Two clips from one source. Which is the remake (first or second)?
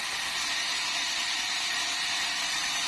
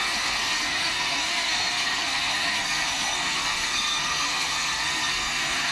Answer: second